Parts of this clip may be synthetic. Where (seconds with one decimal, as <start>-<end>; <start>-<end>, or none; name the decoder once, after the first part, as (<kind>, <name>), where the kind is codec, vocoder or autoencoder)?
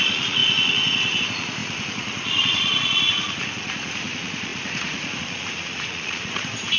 0.0-6.8 (vocoder, Vocos)